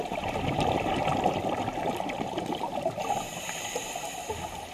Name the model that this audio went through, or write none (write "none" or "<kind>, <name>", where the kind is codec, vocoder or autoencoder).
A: none